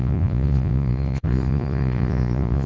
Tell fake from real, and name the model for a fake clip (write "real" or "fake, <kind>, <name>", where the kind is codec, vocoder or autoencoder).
fake, vocoder, Vocos